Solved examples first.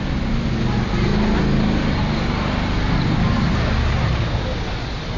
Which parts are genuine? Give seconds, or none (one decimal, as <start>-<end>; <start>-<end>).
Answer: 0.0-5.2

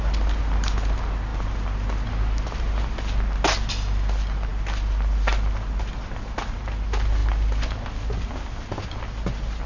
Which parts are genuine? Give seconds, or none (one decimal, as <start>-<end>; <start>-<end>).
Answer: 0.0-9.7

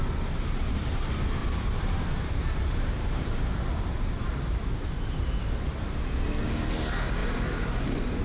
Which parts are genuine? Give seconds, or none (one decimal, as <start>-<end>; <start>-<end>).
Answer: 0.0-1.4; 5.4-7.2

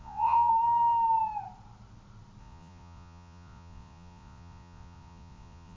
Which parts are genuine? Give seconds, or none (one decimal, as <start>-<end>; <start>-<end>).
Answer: 0.5-2.4

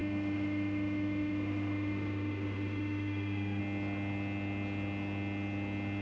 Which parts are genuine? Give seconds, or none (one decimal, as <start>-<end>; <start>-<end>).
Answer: 3.6-6.0

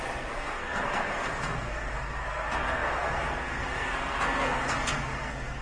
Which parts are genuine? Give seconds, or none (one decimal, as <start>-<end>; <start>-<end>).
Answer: none